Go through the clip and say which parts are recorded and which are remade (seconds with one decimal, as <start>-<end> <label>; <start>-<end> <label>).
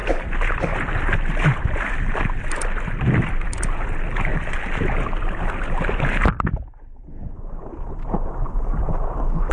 0.0-9.5 recorded